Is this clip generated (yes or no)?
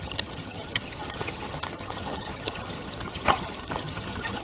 yes